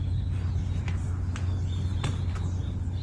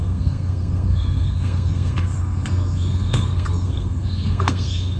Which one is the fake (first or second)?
second